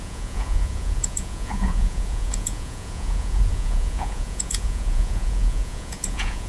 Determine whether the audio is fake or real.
fake